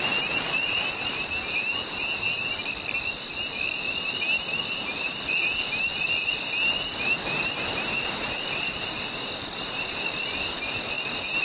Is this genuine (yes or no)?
yes